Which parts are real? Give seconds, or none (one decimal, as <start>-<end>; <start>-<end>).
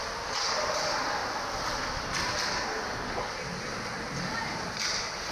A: 0.0-5.3